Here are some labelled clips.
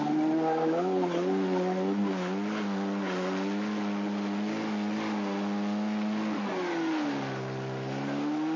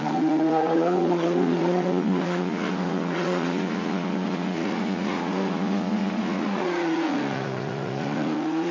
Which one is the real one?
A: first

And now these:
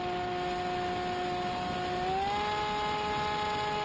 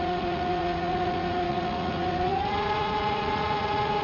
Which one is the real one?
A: first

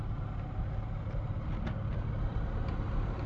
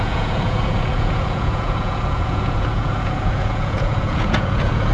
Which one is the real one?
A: first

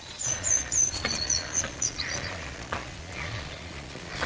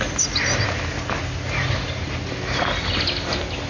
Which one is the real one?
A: second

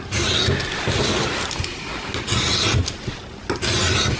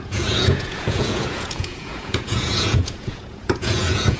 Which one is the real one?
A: first